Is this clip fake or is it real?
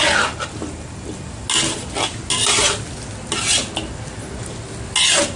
real